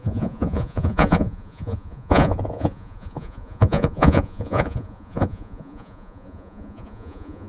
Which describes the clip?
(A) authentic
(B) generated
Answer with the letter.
B